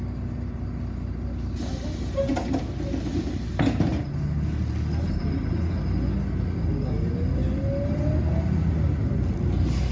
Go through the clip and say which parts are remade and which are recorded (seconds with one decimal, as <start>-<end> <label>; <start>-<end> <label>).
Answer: 0.0-9.9 recorded

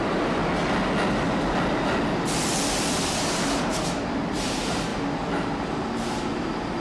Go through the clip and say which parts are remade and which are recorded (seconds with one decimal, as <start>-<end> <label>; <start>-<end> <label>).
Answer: 0.0-0.4 remade; 0.4-2.9 recorded; 2.9-4.9 remade; 4.9-5.6 recorded; 5.6-6.8 remade

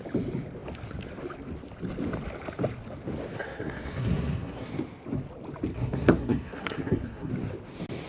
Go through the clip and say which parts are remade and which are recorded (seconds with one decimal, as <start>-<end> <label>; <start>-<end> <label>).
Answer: 0.0-3.3 recorded; 3.3-4.7 remade; 4.7-5.7 recorded; 5.7-7.3 remade; 7.3-8.1 recorded

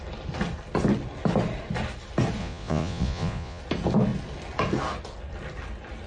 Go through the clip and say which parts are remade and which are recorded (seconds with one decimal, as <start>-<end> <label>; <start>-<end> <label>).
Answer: 0.0-2.4 recorded; 2.4-3.6 remade; 3.6-6.1 recorded

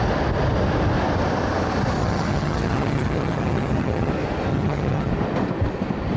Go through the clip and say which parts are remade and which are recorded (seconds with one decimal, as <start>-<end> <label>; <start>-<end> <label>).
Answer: 0.0-2.0 recorded; 2.0-4.1 remade; 4.1-4.5 recorded; 4.5-5.1 remade; 5.1-6.2 recorded

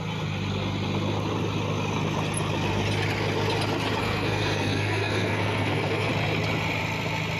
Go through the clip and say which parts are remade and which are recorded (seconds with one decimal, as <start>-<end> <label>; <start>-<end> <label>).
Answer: 0.0-4.0 recorded; 4.0-6.1 remade; 6.1-7.4 recorded

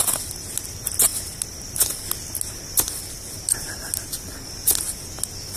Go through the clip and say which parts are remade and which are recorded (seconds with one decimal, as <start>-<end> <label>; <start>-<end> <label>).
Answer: 0.0-5.6 recorded